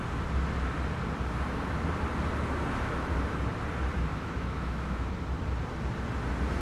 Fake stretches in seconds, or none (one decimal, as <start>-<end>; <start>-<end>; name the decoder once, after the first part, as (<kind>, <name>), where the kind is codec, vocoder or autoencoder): 4.1-5.1 (autoencoder, DAC-VAE)